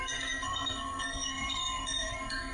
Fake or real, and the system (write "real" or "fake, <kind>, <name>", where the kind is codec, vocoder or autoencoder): fake, codec, SNAC